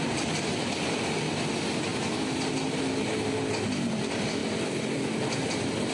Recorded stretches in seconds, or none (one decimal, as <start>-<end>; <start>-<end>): 0.0-1.9; 2.5-4.4